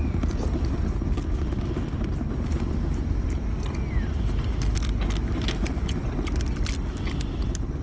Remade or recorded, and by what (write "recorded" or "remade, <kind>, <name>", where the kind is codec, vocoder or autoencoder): recorded